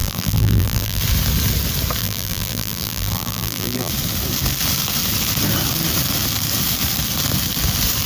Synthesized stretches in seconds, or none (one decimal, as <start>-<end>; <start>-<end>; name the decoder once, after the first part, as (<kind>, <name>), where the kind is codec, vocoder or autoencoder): 0.0-1.0 (vocoder, BigVGAN v2); 2.0-3.9